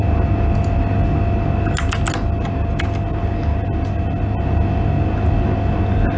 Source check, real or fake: real